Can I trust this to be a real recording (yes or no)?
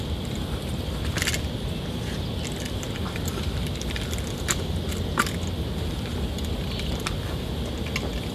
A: yes